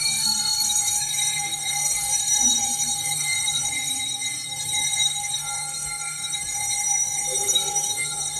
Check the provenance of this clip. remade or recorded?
remade